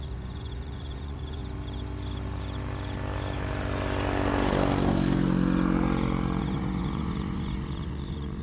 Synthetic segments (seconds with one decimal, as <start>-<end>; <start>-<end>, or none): 0.0-1.4; 6.4-8.4